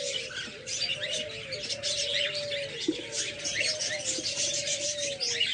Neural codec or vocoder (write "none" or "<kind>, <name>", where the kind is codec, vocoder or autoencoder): none